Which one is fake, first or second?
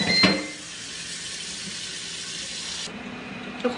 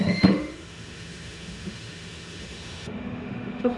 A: second